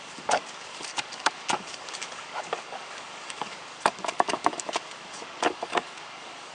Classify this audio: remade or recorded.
remade